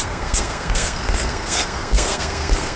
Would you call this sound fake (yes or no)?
yes